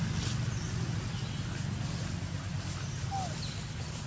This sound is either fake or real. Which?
real